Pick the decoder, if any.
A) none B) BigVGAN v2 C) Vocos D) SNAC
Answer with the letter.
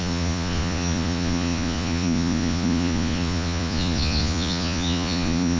C